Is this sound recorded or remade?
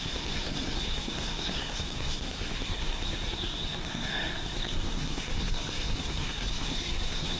remade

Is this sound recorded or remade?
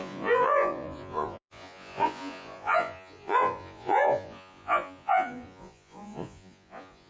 remade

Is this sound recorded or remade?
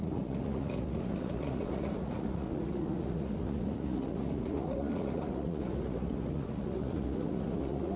remade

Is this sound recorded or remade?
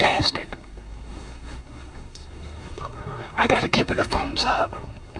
remade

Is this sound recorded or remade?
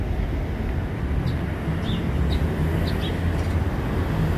recorded